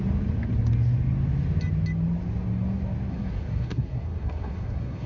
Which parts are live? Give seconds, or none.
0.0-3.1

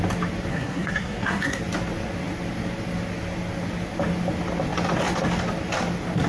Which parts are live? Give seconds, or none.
0.0-0.5; 1.6-6.3

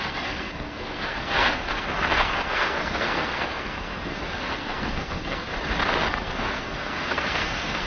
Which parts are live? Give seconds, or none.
5.5-6.1